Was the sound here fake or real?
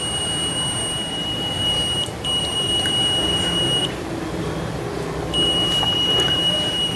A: fake